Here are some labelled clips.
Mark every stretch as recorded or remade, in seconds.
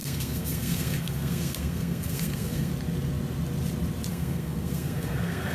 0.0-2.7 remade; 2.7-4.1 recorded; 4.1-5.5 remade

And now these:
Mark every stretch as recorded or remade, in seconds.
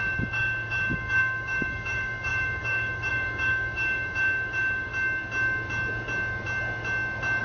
0.0-4.9 remade; 4.9-7.4 recorded